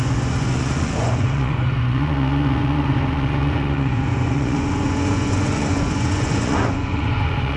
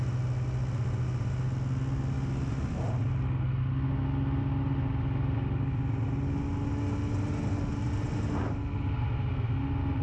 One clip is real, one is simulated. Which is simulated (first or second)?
first